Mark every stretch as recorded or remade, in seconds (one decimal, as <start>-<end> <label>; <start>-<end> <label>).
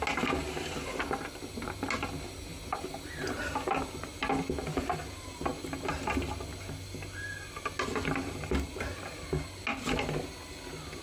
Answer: 0.0-11.0 recorded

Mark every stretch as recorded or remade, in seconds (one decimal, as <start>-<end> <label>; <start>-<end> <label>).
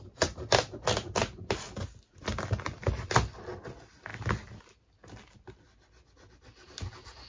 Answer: 0.0-7.3 recorded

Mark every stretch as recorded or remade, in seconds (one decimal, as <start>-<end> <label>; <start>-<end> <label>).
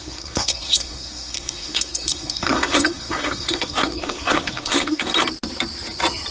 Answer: 0.0-5.1 remade; 5.1-6.3 recorded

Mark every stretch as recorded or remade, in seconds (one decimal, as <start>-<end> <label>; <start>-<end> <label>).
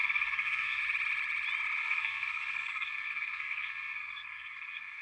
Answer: 0.0-0.8 remade; 0.8-1.8 recorded; 1.8-5.0 remade